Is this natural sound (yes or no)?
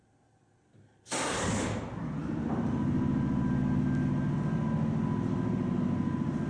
yes